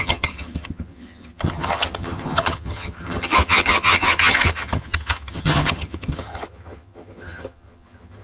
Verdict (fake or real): fake